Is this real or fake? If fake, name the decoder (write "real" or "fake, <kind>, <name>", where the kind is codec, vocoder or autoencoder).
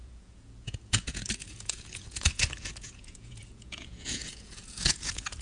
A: fake, vocoder, Vocos